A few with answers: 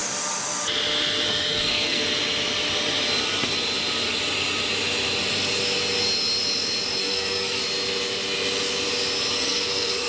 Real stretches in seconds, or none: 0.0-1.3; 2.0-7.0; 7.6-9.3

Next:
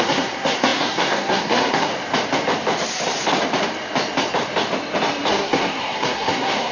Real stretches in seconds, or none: 1.9-5.3

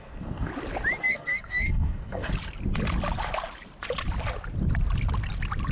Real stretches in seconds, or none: 0.5-1.0; 2.3-5.7

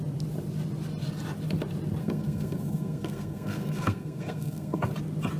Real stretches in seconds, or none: 0.0-2.0; 4.9-5.4

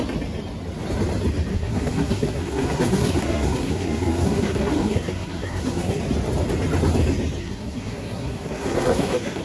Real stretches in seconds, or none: 0.0-1.5; 6.0-7.4

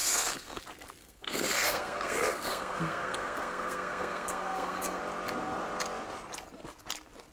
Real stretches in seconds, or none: 0.6-1.0; 5.0-7.3

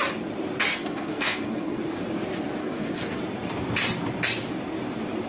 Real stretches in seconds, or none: 0.0-0.7; 1.8-2.6; 3.2-5.3